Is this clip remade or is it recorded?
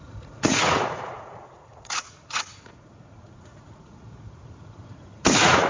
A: remade